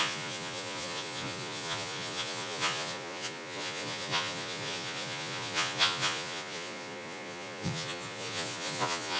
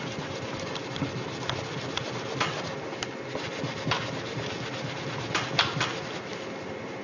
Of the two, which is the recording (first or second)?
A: second